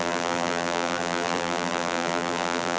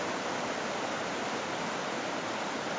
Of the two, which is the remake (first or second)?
first